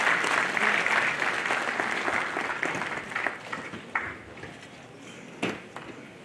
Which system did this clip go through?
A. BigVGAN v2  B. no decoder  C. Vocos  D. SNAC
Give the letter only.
B